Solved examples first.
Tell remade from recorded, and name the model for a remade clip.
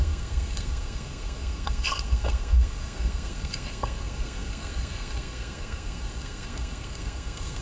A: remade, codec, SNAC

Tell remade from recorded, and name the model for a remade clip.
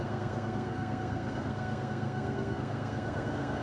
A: remade, codec, SNAC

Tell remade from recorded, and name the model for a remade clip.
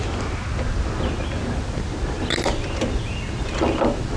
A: recorded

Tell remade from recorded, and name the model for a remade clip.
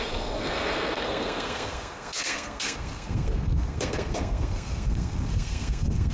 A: remade, codec, SNAC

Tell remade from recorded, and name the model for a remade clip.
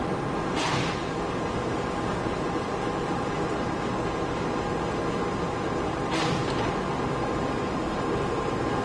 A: recorded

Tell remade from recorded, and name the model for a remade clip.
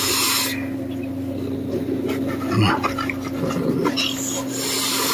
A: recorded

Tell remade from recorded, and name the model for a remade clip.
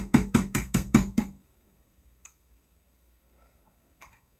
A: remade, codec, SNAC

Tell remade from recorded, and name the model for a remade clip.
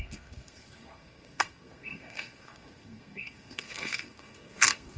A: remade, codec, SNAC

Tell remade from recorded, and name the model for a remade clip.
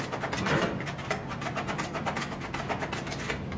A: recorded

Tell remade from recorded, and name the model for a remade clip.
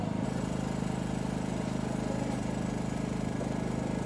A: recorded